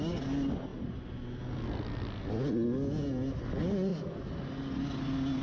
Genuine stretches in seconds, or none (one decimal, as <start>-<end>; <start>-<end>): 0.0-5.4